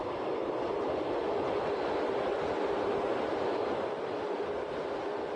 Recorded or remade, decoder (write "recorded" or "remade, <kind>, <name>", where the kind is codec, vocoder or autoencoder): recorded